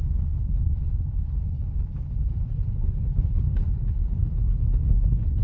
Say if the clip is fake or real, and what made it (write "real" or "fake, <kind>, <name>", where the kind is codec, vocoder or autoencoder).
fake, codec, HILCodec